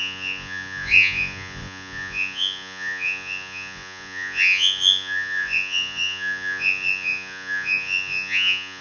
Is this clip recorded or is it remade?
remade